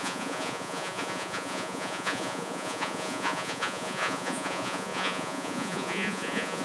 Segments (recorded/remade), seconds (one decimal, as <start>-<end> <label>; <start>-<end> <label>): 0.0-6.6 remade